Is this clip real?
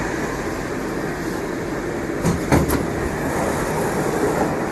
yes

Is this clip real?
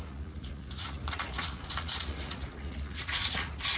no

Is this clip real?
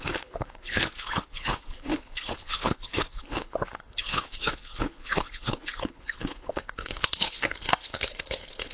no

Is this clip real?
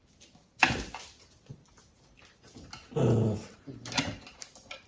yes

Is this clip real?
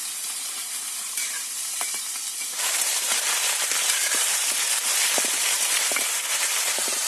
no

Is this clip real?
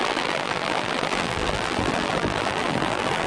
no